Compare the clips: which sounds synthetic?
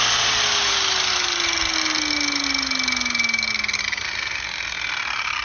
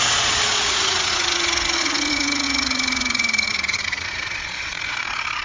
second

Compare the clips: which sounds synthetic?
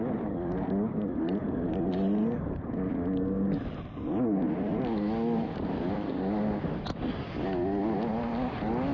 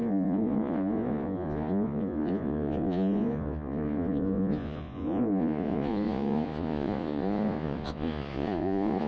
second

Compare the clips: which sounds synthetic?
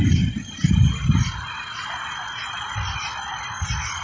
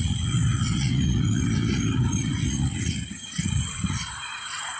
second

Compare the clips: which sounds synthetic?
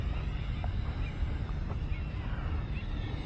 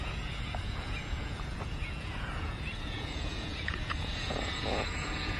second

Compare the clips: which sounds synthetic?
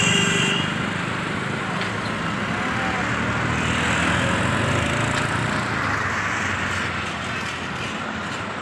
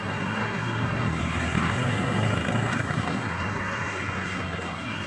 second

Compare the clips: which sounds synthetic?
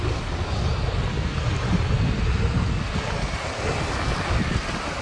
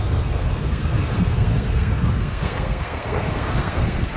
second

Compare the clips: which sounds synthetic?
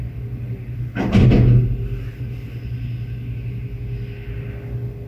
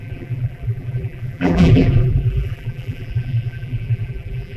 second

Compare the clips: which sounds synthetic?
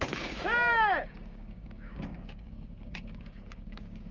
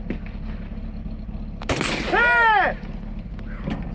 first